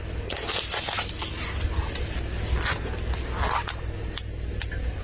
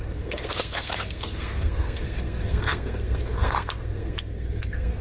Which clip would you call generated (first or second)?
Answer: second